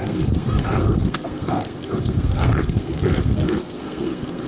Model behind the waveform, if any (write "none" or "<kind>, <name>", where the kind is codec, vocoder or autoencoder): codec, SNAC